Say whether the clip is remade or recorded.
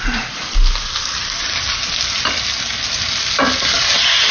recorded